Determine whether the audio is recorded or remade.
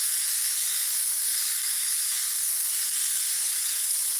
remade